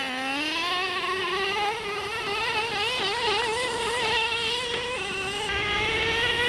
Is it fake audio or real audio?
real